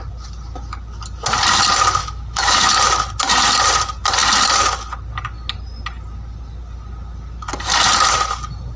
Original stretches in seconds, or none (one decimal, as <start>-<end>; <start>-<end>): 0.0-2.0; 2.6-8.8